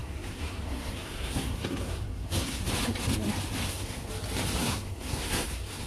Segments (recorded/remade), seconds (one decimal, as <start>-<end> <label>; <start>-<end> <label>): 0.0-2.6 remade; 2.6-3.6 recorded; 3.6-4.1 remade; 4.1-4.6 recorded; 4.6-5.9 remade